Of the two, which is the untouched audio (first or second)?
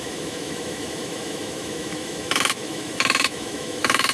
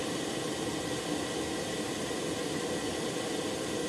second